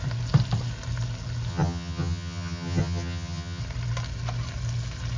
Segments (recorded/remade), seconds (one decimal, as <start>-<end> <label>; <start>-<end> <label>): 0.0-1.5 recorded; 1.5-3.6 remade; 3.6-5.2 recorded